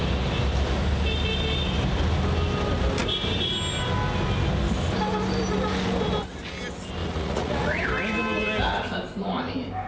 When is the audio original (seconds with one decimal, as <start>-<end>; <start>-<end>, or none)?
0.0-7.0; 7.8-9.9